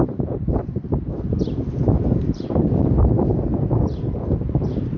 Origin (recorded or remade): remade